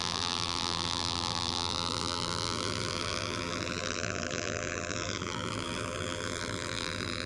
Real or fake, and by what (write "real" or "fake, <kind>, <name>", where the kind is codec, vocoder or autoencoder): fake, vocoder, BigVGAN v2